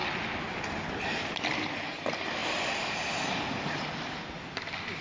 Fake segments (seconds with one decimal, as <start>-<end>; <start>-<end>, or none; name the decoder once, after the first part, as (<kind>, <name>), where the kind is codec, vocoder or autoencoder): 0.0-5.0 (vocoder, BigVGAN v2)